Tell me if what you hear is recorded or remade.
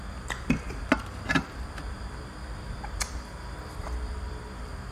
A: recorded